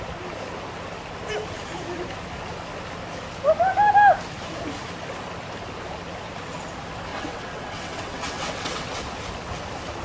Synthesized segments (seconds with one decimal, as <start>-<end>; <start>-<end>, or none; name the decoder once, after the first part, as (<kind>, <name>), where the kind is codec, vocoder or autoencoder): 7.1-8.9 (vocoder, WaveNeXt)